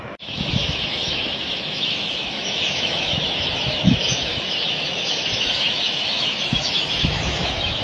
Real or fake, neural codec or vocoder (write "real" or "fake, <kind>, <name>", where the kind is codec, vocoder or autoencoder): fake, autoencoder, DAC-VAE